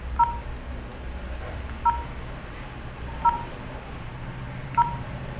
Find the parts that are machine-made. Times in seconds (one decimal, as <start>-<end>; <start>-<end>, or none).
4.6-5.4